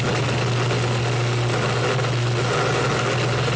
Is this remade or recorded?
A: recorded